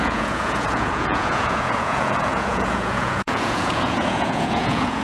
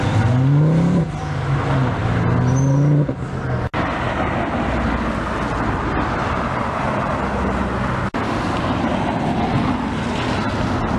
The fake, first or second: first